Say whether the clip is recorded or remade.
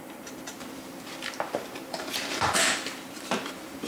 remade